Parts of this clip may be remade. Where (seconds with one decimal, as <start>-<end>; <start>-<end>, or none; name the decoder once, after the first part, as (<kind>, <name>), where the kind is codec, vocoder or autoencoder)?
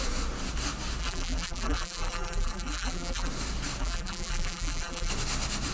1.0-3.3 (vocoder, BigVGAN v2); 3.8-5.1